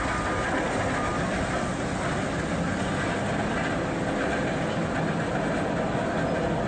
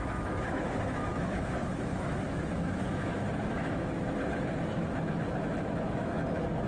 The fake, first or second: second